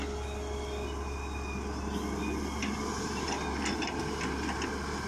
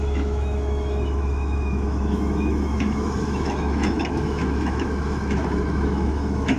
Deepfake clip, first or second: second